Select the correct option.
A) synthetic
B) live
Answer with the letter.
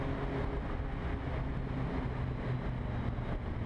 B